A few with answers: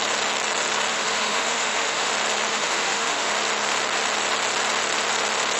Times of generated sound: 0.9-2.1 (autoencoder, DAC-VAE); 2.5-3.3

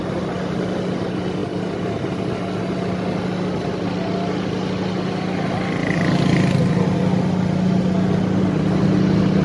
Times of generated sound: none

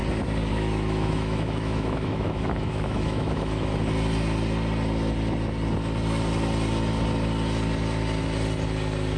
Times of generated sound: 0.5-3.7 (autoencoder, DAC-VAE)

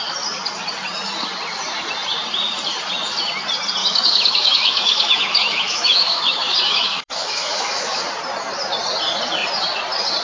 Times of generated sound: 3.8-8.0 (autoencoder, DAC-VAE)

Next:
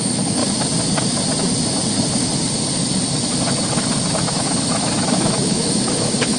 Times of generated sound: 0.0-0.4 (autoencoder, DAC-VAE); 4.2-6.4

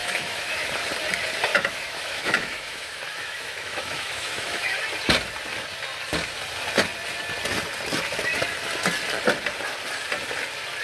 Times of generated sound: 0.0-0.7 (autoencoder, DAC-VAE); 1.5-4.8